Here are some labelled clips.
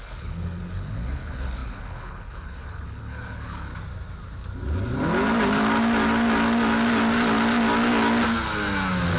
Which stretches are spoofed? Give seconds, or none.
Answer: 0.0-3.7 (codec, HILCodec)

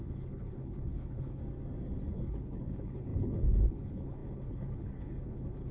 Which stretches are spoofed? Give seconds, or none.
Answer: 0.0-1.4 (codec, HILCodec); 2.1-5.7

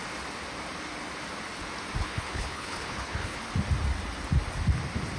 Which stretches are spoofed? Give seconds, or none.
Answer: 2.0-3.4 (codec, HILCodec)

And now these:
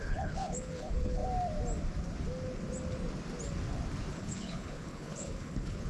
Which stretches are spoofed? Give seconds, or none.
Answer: 0.0-1.2 (codec, HILCodec); 4.1-5.9